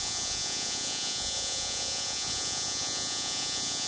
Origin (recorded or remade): remade